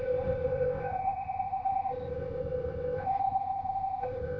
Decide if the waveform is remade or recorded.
remade